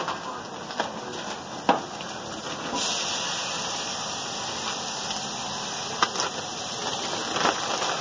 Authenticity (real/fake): real